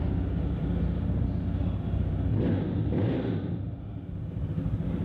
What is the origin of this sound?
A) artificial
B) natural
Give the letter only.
B